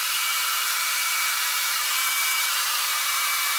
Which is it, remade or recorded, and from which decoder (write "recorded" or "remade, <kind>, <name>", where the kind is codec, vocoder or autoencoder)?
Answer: remade, vocoder, BigVGAN v2